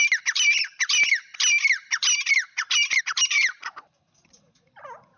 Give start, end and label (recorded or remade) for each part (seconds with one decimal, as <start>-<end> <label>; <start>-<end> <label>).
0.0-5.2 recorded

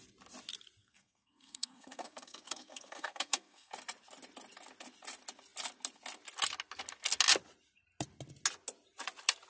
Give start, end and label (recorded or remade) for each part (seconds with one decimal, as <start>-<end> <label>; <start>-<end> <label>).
0.0-0.8 recorded; 0.8-3.7 remade; 3.7-9.5 recorded

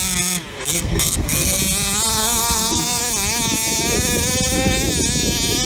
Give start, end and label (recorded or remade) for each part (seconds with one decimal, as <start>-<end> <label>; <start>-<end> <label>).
0.0-0.5 recorded; 0.5-1.6 remade; 1.6-2.2 recorded; 2.2-3.0 remade; 3.0-5.6 recorded